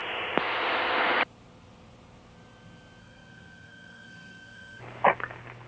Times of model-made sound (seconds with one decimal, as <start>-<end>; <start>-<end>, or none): 3.0-4.8